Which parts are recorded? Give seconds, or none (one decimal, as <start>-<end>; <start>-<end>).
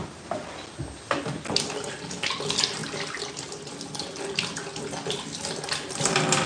0.0-6.5